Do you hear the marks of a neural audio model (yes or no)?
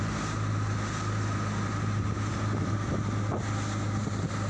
no